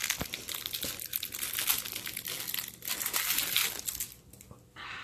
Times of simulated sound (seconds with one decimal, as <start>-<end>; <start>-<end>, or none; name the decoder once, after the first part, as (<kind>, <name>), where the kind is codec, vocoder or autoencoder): none